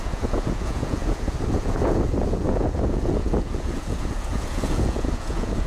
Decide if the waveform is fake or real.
fake